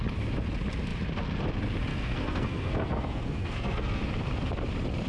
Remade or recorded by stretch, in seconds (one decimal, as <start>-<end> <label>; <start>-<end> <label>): 0.0-1.9 recorded; 1.9-4.0 remade; 4.0-5.1 recorded